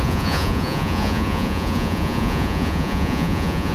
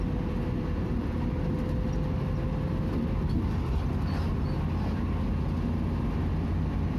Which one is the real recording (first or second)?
second